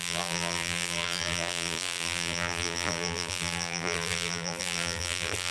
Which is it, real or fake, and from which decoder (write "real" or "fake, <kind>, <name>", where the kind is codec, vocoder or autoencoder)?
fake, vocoder, BigVGAN v2